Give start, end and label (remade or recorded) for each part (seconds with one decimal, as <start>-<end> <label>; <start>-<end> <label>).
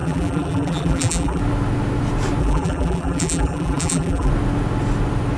0.0-1.4 remade; 1.4-2.4 recorded; 2.4-4.3 remade; 4.3-5.4 recorded